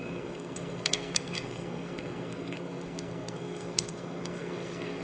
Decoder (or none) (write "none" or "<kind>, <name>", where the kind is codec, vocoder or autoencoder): codec, SNAC